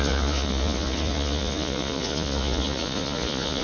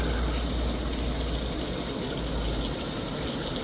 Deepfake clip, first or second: first